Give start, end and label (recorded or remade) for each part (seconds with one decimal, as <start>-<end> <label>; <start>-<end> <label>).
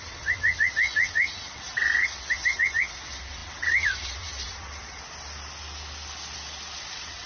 0.0-5.0 remade; 5.0-6.8 recorded; 6.8-7.3 remade